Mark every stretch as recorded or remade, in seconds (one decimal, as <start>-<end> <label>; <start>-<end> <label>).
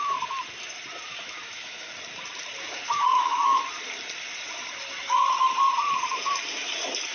0.0-1.1 recorded; 1.1-1.9 remade; 1.9-3.1 recorded; 3.1-3.6 remade; 3.6-7.1 recorded